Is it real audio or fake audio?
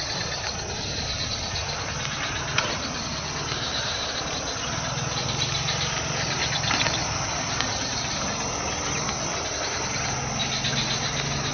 real